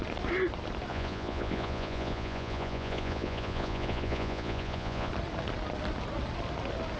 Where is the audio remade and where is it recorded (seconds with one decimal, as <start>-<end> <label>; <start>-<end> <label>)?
0.0-0.9 recorded; 0.9-5.1 remade; 5.1-7.0 recorded